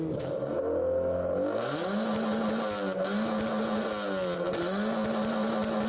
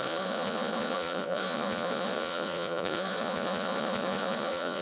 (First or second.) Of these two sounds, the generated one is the second